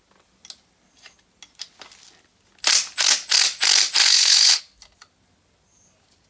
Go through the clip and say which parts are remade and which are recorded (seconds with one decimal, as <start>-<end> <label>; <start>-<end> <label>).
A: 0.0-4.0 recorded; 4.0-4.6 remade; 4.6-6.3 recorded